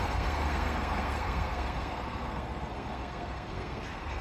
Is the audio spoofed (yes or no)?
yes